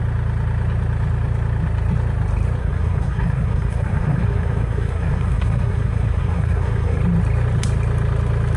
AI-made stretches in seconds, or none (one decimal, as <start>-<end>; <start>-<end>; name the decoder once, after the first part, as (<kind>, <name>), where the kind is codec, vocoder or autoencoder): 2.6-7.0 (codec, SNAC)